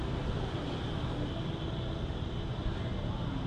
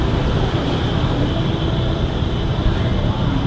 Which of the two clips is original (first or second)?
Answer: first